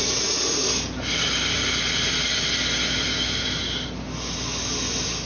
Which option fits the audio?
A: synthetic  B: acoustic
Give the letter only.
B